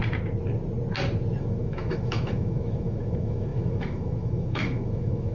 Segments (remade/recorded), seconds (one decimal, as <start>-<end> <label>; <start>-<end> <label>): 0.0-1.4 recorded; 1.4-5.3 remade